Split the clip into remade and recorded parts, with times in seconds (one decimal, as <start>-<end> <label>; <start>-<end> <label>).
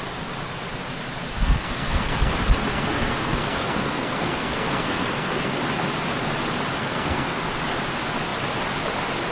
0.0-1.3 recorded; 1.3-2.3 remade; 2.3-2.7 recorded; 2.7-5.6 remade; 5.6-6.8 recorded; 6.8-7.5 remade; 7.5-9.3 recorded